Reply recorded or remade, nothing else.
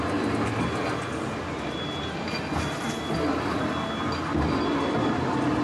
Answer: recorded